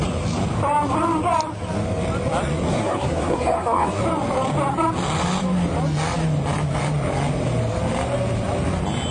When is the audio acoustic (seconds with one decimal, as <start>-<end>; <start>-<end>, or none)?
0.0-2.7; 4.0-9.1